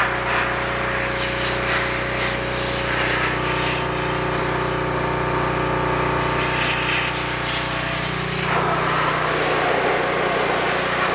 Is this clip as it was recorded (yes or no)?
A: yes